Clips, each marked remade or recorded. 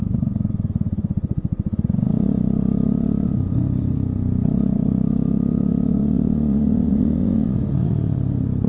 remade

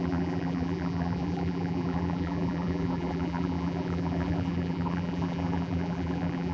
remade